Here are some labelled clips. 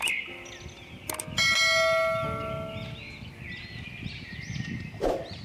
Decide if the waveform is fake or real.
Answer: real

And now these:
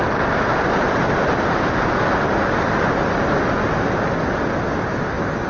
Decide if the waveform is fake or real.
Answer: real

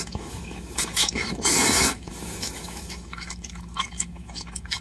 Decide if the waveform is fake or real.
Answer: fake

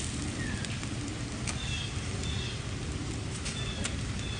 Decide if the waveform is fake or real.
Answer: real